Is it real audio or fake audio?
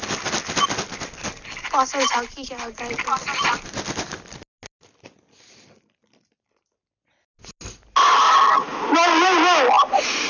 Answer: real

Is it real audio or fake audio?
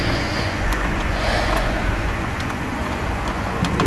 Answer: fake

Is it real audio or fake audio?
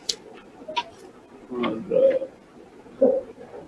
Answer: real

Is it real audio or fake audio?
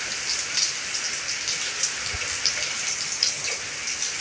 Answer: real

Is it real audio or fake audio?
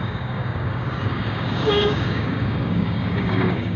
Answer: fake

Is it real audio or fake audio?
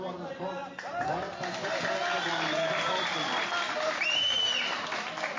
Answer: real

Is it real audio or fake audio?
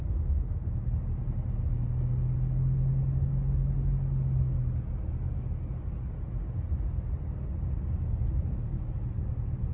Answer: real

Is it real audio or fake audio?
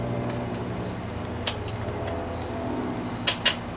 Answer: real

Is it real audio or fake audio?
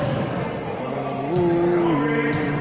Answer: real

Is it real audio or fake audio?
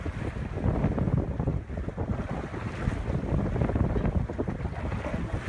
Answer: real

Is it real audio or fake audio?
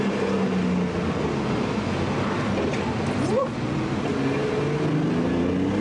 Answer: real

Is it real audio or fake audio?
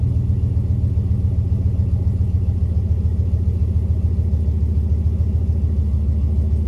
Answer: real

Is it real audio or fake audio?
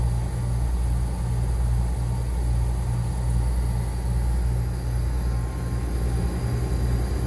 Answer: real